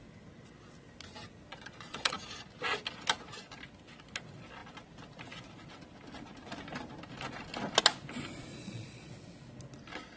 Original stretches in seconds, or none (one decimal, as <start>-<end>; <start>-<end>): 0.0-1.5; 2.1-8.5; 9.1-10.2